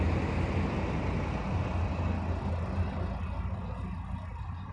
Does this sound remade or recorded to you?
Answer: recorded